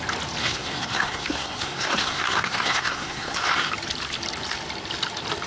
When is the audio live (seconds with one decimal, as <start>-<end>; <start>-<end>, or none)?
0.0-0.4; 3.7-5.5